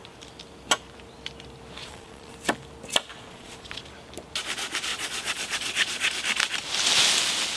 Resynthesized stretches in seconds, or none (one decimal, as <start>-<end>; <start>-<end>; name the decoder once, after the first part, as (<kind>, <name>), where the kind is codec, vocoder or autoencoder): 1.8-2.3 (vocoder, Vocos); 3.1-3.8; 4.9-6.1